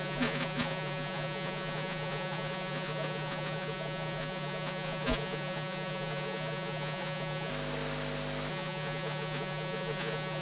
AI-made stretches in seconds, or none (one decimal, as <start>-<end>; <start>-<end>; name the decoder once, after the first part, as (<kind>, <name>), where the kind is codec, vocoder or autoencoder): 0.0-7.5 (vocoder, Vocos); 8.5-10.4